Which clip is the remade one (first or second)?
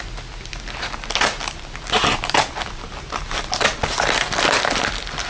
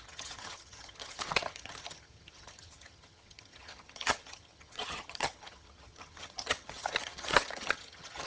second